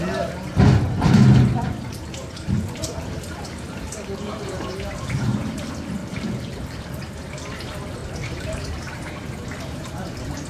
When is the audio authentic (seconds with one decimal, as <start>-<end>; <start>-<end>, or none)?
0.0-1.9; 5.4-6.0; 6.9-8.0; 9.1-10.5